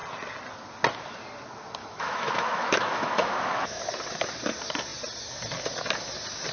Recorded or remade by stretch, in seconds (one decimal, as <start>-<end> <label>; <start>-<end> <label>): 0.0-1.8 recorded; 1.8-3.8 remade; 3.8-6.5 recorded

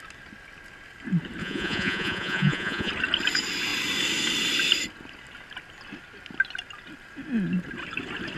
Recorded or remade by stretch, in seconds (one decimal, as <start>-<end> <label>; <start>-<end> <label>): 0.0-1.4 recorded; 1.4-2.9 remade; 2.9-8.4 recorded

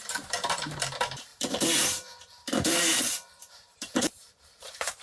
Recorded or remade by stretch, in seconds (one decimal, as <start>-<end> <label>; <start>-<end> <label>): 0.0-5.0 remade